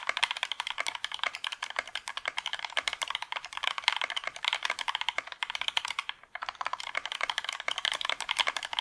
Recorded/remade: remade